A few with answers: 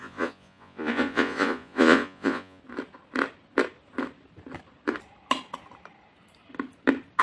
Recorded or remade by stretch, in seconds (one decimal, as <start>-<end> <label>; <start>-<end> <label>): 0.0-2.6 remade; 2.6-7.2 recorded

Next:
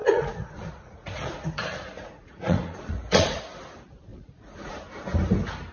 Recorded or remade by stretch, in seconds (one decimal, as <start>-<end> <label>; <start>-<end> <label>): 0.0-3.4 remade; 3.4-4.1 recorded; 4.1-4.7 remade; 4.7-5.7 recorded

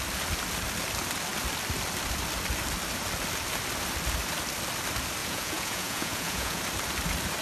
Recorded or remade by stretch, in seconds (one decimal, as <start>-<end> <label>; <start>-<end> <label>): 0.0-5.2 recorded; 5.2-6.6 remade; 6.6-7.4 recorded

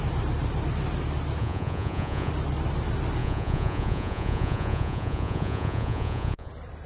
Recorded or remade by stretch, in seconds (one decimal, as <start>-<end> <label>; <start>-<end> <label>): 0.0-1.4 recorded; 1.4-2.3 remade; 2.3-3.2 recorded; 3.2-6.5 remade; 6.5-6.9 recorded

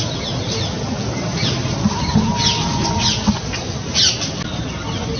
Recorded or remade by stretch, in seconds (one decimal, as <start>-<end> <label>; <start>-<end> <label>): 0.0-5.2 recorded